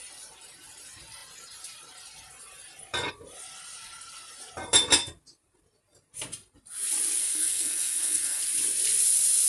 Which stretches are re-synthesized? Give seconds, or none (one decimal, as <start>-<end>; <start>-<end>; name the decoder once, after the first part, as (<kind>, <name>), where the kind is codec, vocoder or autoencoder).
7.2-8.4 (codec, SNAC)